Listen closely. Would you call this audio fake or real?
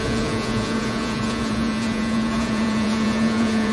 fake